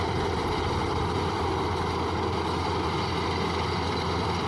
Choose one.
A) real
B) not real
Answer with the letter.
A